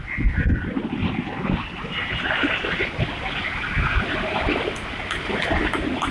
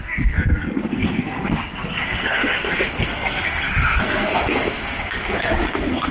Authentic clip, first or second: first